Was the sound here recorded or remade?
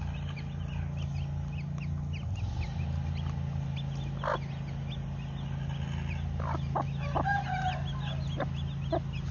recorded